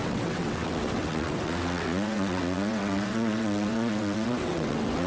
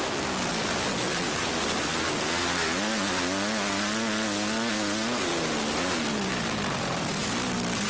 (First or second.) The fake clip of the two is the first